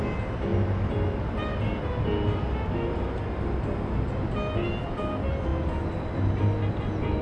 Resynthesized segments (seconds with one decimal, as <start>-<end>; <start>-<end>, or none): none